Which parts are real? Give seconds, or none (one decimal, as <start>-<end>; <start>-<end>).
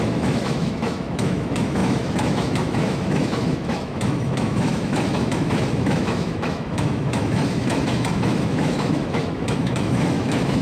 none